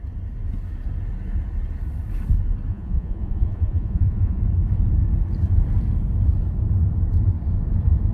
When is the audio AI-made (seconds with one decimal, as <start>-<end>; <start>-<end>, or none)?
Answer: 2.7-4.4